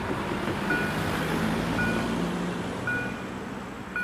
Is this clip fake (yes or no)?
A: no